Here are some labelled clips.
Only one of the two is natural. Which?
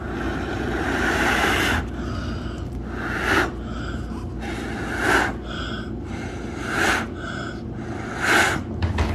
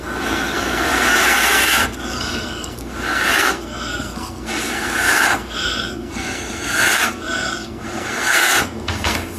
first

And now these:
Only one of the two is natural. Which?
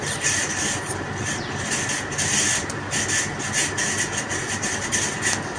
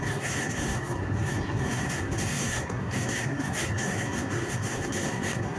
first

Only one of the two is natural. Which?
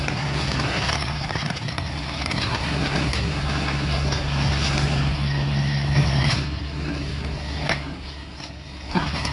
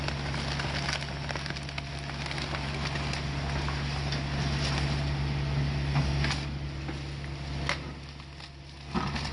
second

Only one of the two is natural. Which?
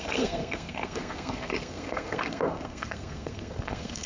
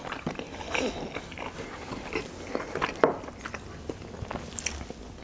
second